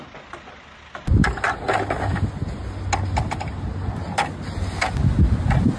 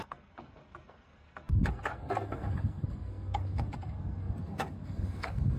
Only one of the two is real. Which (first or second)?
first